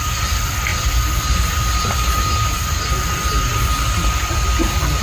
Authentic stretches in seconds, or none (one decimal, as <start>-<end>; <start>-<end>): 0.0-5.0